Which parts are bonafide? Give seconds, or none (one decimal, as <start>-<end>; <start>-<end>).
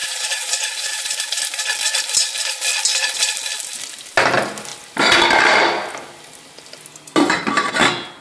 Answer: 1.4-8.2